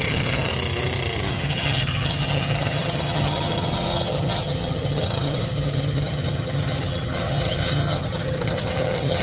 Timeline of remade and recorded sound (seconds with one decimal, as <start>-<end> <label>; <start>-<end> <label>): 0.0-0.5 remade; 0.5-1.3 recorded; 1.3-9.2 remade